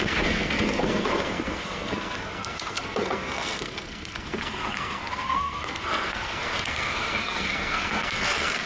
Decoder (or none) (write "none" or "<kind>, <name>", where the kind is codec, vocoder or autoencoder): codec, SNAC